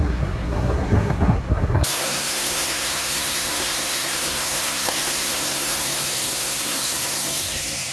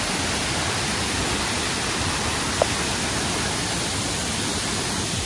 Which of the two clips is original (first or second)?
second